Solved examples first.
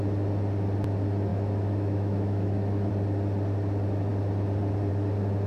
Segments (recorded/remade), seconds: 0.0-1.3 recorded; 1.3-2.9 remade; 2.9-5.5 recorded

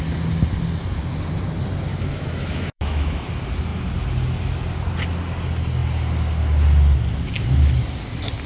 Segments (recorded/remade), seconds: 0.0-1.9 recorded; 1.9-3.3 remade; 3.3-8.5 recorded

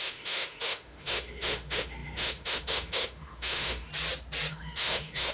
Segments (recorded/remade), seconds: 0.0-3.9 remade; 3.9-4.5 recorded; 4.5-5.3 remade